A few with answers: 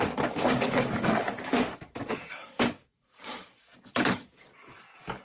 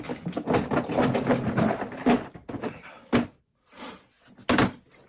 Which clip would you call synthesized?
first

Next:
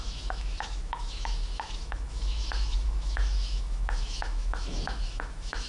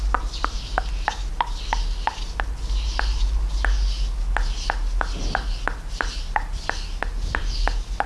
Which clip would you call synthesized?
first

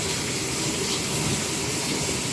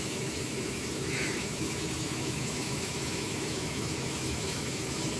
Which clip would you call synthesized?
second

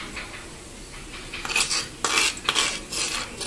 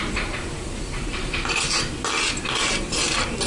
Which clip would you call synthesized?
second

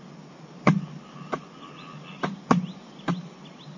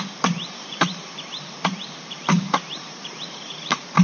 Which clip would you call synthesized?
second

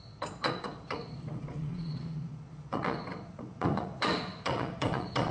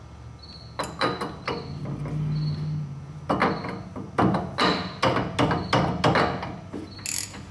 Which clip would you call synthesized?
first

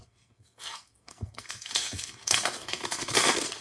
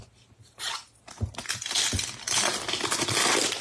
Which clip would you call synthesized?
first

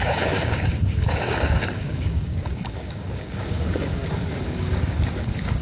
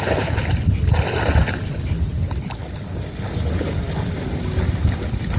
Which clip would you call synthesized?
first